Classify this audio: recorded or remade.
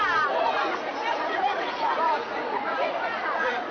remade